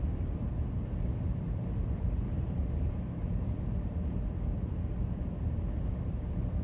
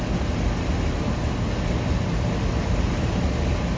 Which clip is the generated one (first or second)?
first